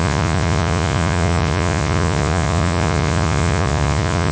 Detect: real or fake fake